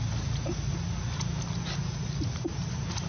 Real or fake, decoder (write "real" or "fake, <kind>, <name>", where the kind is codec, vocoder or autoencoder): real